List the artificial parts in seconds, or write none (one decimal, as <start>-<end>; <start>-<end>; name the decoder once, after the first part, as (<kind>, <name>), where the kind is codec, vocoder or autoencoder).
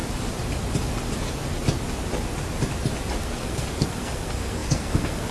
3.2-5.3 (codec, SNAC)